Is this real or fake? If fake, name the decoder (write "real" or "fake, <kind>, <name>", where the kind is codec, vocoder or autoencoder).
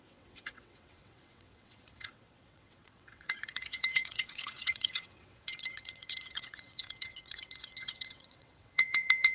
fake, vocoder, WaveNeXt